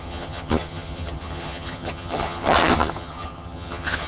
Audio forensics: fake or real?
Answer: fake